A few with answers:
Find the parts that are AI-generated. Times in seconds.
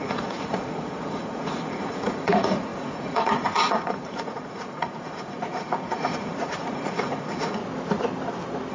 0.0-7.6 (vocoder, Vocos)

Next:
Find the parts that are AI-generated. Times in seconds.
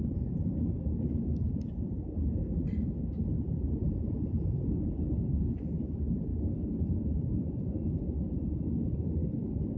none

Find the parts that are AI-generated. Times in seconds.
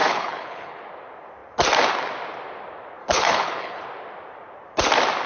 0.0-0.8 (codec, HILCodec); 3.0-3.8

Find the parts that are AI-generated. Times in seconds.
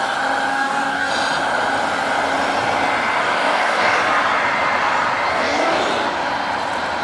0.5-1.1 (codec, DAC); 3.2-4.0; 5.3-5.8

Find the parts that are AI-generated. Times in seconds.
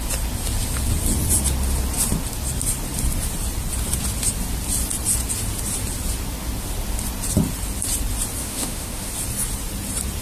8.4-9.1 (autoencoder, DAC-VAE)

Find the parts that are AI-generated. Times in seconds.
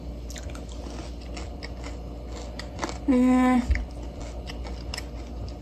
none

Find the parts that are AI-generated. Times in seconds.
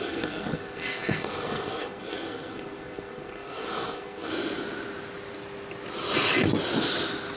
0.0-4.3 (codec, SNAC)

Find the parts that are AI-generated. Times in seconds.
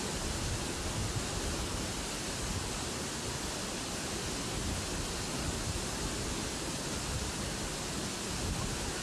none